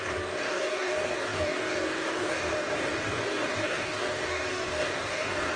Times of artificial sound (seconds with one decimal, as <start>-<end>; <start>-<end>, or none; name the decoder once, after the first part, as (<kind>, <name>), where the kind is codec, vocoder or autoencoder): 0.0-5.6 (codec, DAC)

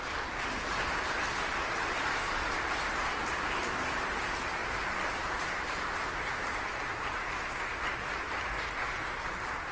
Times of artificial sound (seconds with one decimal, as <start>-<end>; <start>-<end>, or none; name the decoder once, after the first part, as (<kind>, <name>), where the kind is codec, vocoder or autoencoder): none

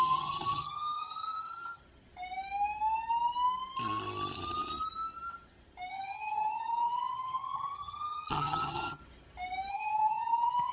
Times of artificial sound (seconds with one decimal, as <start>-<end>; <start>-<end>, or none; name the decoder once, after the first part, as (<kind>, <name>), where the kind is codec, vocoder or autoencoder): 0.0-1.8 (vocoder, HiFi-GAN); 5.9-9.0; 9.7-10.7

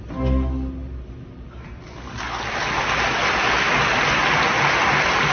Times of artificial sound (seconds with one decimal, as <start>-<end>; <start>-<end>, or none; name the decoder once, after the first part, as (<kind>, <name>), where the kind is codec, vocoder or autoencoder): none

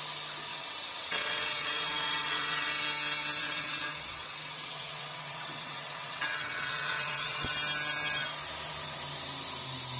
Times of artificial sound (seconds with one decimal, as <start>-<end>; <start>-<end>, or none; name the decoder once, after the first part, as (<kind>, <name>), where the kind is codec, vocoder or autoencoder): 0.5-2.7 (vocoder, WaveNeXt); 3.4-7.5

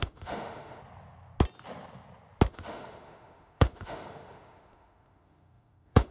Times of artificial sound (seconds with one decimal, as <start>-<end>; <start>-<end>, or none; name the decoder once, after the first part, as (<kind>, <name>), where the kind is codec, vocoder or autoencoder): 0.0-0.8 (autoencoder, DAC-VAE); 2.5-6.1